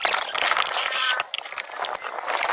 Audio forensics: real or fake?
real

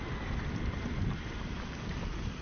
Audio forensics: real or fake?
real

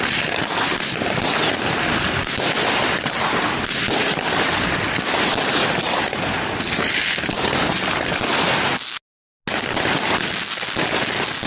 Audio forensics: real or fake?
real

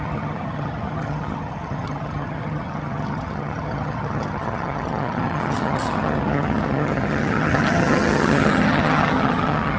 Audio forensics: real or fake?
fake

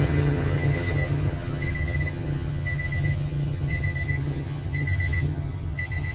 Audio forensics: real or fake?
fake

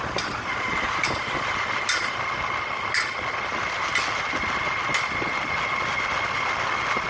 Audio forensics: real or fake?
real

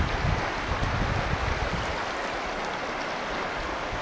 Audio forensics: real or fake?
real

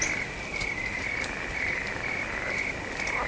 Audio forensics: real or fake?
real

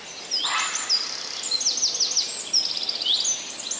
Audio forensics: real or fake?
real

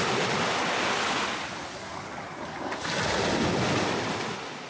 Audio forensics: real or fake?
real